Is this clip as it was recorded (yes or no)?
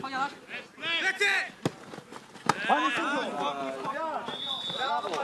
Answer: yes